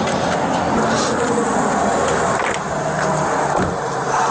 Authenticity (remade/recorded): recorded